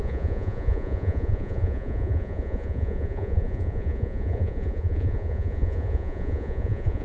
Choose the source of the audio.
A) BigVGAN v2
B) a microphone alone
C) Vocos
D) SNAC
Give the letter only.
C